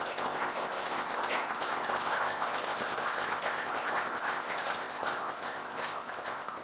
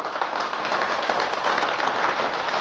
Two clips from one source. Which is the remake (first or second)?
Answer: first